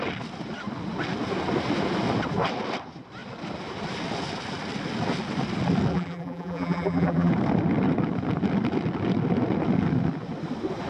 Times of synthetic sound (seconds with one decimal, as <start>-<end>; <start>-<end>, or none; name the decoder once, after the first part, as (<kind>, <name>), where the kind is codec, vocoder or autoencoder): 5.9-7.3 (vocoder, BigVGAN v2)